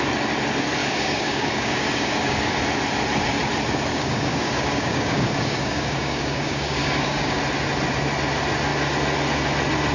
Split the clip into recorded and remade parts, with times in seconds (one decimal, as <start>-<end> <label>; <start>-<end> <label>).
0.0-0.8 recorded; 0.8-2.6 remade; 2.6-3.9 recorded; 3.9-7.4 remade; 7.4-9.9 recorded